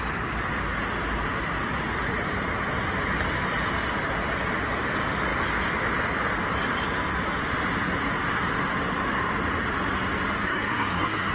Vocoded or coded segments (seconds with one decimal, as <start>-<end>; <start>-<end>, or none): 10.4-11.3